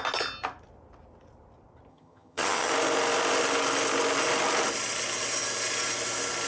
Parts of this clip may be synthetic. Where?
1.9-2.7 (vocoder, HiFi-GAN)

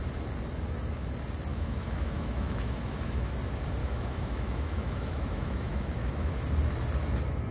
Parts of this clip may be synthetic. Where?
1.5-3.3 (autoencoder, DAC-VAE); 3.8-6.3